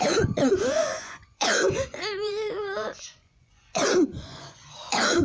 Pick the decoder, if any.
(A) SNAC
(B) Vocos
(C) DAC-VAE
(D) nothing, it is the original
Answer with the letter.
B